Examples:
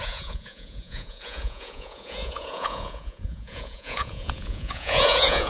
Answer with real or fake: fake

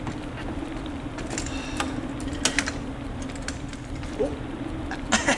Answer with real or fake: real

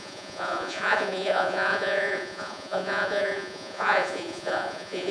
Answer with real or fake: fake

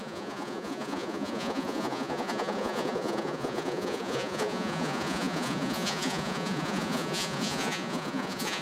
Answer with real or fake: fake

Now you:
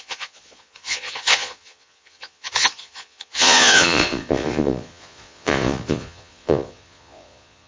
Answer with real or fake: fake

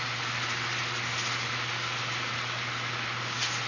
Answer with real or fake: real